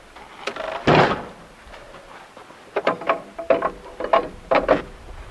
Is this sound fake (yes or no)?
no